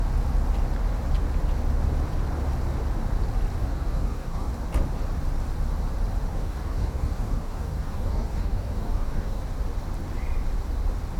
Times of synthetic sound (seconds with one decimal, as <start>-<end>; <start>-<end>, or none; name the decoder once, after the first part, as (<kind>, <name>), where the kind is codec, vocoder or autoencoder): 3.6-4.5 (codec, DAC); 6.3-9.4